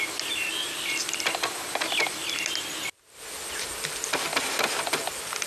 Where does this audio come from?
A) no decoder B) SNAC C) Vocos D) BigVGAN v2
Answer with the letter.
A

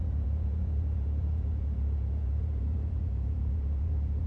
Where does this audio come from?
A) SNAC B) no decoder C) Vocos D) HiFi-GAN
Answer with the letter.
C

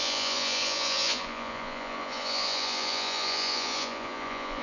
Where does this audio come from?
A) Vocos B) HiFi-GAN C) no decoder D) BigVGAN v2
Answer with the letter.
A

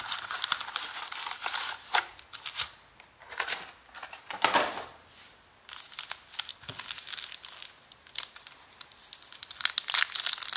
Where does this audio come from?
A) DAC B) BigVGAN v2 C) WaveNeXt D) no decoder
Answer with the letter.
D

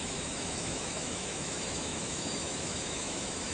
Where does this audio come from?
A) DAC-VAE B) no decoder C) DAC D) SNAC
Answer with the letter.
A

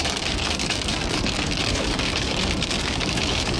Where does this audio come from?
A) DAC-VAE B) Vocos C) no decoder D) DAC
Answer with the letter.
D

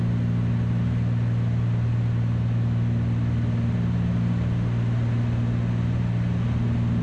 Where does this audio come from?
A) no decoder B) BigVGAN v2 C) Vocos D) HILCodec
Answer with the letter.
A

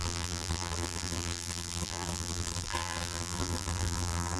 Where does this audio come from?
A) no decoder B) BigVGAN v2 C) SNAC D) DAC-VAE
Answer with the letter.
B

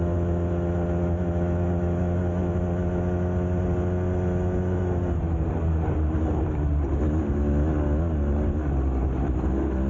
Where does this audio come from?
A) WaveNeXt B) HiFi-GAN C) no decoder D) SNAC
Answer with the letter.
C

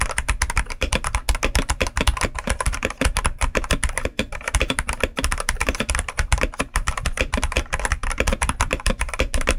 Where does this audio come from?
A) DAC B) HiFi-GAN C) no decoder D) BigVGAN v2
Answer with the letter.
D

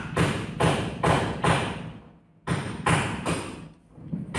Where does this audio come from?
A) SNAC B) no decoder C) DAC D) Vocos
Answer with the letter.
B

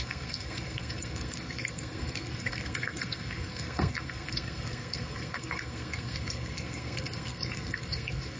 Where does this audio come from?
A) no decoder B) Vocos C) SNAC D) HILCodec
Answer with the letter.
C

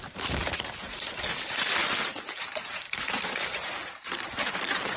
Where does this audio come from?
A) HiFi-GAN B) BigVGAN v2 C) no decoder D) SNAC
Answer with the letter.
B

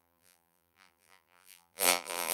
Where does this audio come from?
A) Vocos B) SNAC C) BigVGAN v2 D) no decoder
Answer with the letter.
C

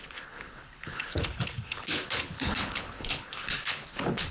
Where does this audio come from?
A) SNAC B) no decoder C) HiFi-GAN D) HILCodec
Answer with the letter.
D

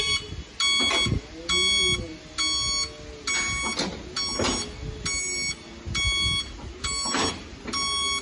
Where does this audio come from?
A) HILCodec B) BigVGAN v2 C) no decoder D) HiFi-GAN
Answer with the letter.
C